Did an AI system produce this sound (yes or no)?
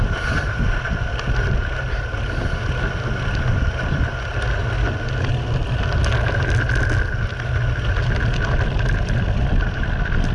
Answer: no